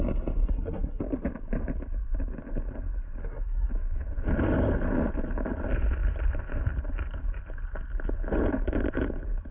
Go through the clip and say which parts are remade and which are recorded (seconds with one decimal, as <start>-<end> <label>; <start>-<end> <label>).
0.0-0.4 recorded; 0.4-1.0 remade; 1.0-3.2 recorded; 3.2-3.7 remade; 3.7-9.5 recorded